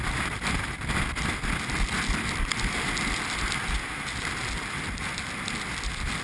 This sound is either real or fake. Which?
real